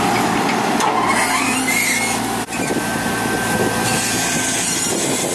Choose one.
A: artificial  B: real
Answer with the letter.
B